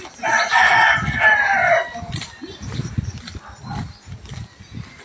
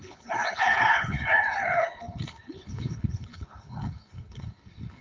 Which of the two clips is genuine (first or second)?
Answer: first